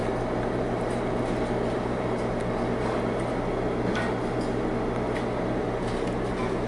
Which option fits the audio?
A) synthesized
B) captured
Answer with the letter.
B